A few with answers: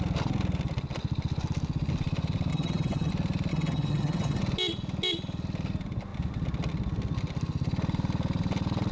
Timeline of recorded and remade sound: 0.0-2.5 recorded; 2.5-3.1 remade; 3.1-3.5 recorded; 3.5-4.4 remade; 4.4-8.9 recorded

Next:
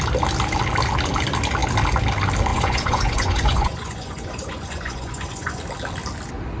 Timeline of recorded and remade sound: 0.0-2.5 recorded; 2.5-5.6 remade; 5.6-6.6 recorded

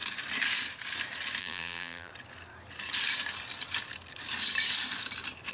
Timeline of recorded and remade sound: 0.0-1.4 recorded; 1.4-2.1 remade; 2.1-5.5 recorded

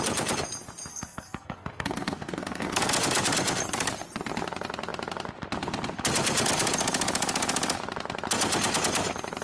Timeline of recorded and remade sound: 0.0-0.9 recorded; 0.9-2.8 remade; 2.8-9.4 recorded

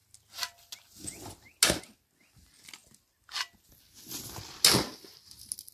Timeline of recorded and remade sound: 0.0-5.7 recorded

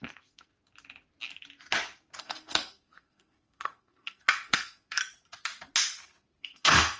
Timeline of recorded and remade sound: 0.0-0.5 remade; 0.5-2.2 recorded; 2.2-5.0 remade; 5.0-6.4 recorded; 6.4-7.0 remade

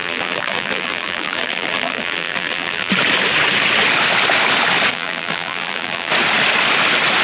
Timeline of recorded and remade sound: 0.0-2.9 remade; 2.9-4.9 recorded; 4.9-6.1 remade; 6.1-7.2 recorded

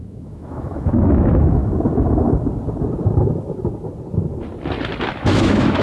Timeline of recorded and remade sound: 0.0-1.6 remade; 1.6-5.1 recorded; 5.1-5.8 remade